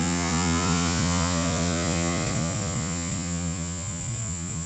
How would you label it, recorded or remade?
remade